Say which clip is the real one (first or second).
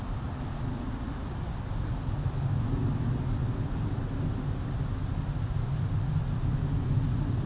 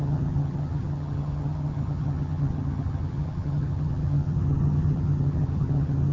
first